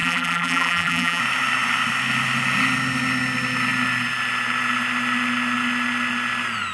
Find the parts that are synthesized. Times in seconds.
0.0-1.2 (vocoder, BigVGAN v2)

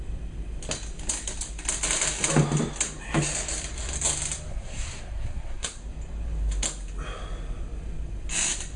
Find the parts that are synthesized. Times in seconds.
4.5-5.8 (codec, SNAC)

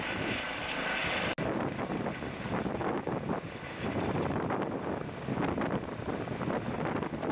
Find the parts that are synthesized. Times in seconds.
none

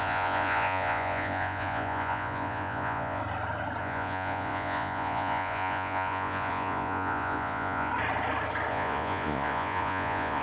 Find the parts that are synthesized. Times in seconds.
0.0-3.2 (vocoder, Vocos); 3.8-7.9; 8.7-10.4